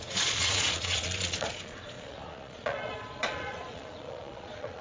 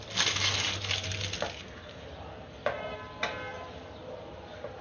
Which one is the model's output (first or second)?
first